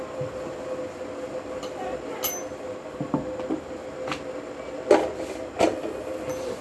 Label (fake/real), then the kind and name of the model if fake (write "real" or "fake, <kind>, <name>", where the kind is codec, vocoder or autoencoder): real